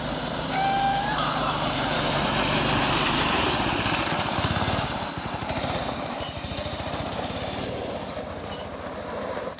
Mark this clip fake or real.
fake